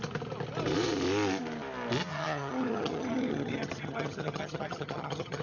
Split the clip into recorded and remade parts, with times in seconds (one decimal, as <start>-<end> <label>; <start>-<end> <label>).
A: 0.0-2.1 recorded; 2.1-5.4 remade